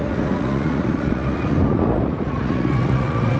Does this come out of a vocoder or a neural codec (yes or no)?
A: yes